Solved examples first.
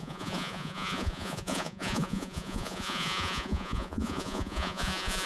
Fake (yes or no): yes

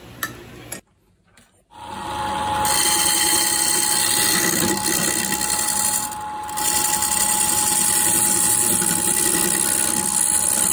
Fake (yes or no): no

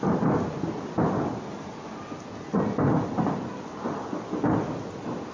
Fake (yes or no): no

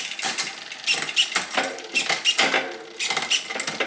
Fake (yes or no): no